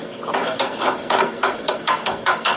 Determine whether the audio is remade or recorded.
remade